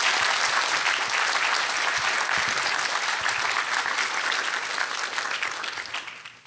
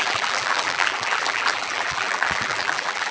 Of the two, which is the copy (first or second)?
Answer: second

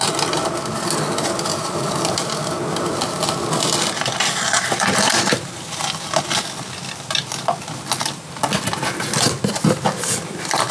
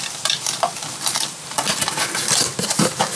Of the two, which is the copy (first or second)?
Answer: second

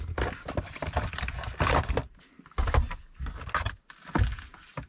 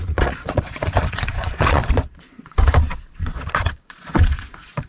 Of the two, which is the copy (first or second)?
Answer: second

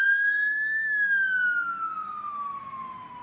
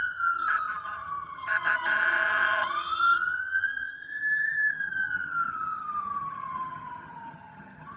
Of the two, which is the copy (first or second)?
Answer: second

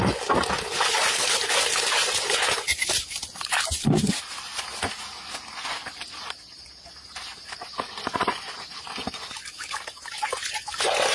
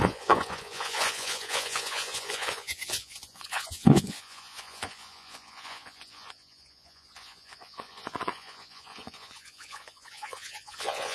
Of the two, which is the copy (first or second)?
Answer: second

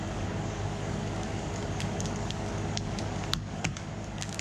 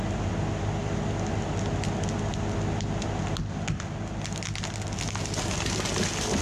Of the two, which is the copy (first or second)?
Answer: first